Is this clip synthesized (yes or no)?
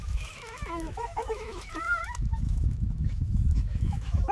yes